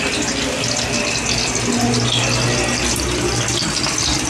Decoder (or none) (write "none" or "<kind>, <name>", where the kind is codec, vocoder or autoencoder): none